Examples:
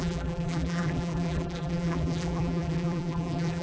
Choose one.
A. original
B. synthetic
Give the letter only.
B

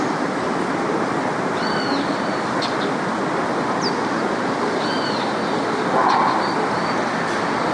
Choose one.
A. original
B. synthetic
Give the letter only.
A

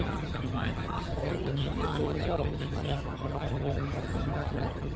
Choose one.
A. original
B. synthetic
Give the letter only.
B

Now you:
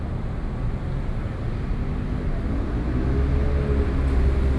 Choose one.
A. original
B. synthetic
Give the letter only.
A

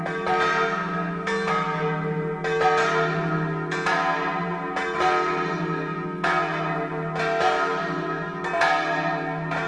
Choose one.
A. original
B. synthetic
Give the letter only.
A